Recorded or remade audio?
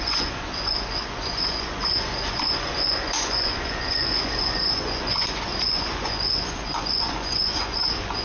remade